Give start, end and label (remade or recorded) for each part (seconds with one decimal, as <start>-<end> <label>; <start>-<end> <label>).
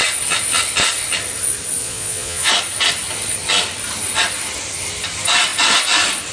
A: 0.0-1.8 recorded; 1.8-2.5 remade; 2.5-6.3 recorded